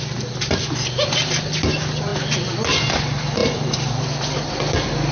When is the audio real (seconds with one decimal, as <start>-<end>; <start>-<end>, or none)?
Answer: 0.0-3.4; 4.5-5.1

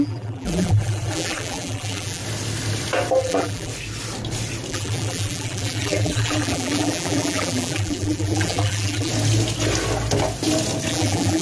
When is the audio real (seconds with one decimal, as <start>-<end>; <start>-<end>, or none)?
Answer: 2.2-3.2; 3.7-4.7; 9.1-10.9

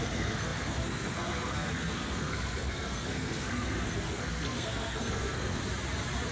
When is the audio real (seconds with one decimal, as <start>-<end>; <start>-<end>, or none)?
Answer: 5.6-6.3